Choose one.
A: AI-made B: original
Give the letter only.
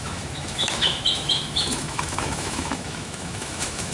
A